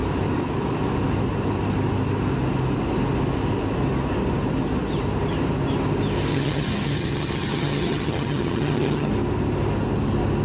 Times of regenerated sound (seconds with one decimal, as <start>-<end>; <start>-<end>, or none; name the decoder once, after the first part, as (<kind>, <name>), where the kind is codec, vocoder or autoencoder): 6.3-9.1 (vocoder, HiFi-GAN)